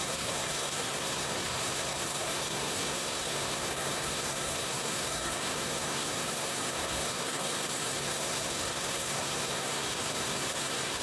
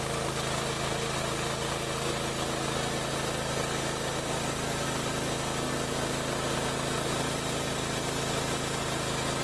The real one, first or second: second